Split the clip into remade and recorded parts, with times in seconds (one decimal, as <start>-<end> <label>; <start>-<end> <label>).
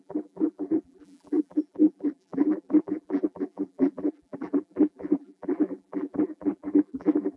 0.0-7.4 remade